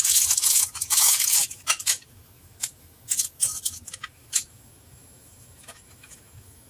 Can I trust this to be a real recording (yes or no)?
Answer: no